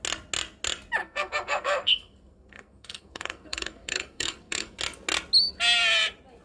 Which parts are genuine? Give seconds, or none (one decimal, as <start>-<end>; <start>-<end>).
0.0-1.0; 4.8-6.4